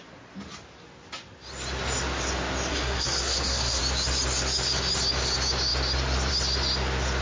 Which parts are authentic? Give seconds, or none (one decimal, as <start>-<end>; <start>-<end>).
0.0-2.7; 3.8-7.2